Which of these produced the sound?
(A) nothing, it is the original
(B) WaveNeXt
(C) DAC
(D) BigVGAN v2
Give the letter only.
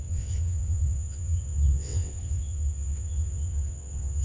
B